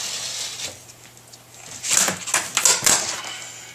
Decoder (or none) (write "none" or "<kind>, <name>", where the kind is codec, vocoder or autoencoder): none